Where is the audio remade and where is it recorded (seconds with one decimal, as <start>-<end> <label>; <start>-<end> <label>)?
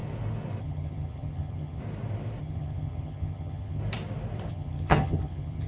0.0-0.6 recorded; 0.6-1.8 remade; 1.8-2.4 recorded; 2.4-3.8 remade; 3.8-4.5 recorded; 4.5-5.7 remade